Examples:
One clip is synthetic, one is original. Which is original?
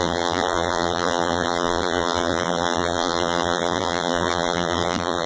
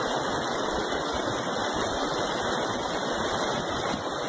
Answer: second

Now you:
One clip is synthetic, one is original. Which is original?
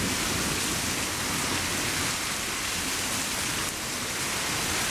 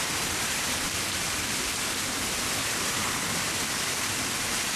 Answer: first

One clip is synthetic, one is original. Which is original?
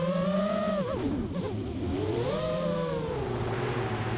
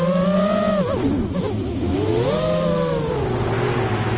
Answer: second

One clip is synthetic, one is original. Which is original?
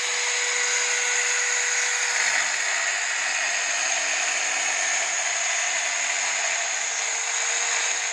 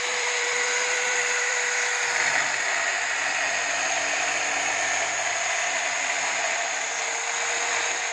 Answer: first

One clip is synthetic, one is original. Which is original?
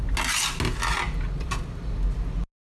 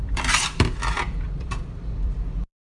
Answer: first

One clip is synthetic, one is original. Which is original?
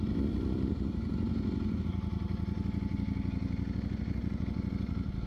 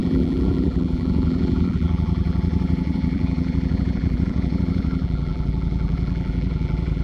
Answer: first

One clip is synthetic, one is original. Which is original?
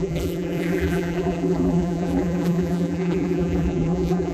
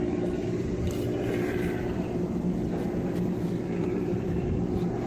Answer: second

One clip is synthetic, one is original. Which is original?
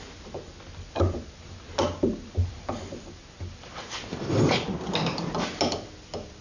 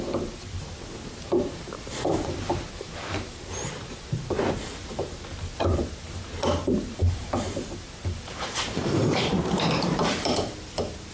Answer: first